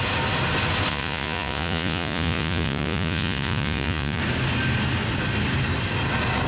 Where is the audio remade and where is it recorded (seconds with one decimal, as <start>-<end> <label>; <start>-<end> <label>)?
0.0-0.9 recorded; 0.9-4.2 remade; 4.2-6.5 recorded